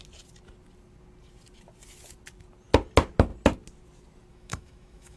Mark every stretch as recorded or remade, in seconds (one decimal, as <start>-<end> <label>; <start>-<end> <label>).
0.0-4.3 recorded; 4.3-5.2 remade